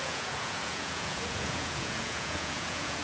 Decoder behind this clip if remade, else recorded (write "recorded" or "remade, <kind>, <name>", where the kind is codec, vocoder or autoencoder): remade, vocoder, Vocos